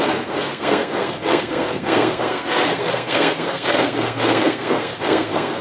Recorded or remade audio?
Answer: remade